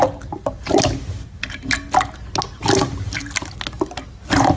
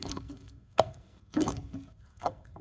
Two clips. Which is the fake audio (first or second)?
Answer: second